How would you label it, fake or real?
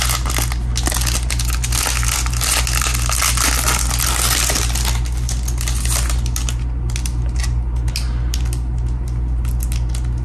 real